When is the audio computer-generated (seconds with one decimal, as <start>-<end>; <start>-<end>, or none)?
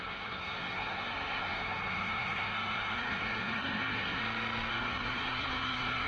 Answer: 0.0-4.2; 4.7-6.1